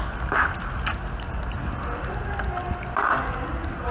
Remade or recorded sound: recorded